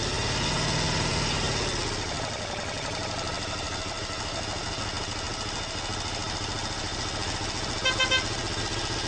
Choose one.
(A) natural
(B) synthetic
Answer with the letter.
A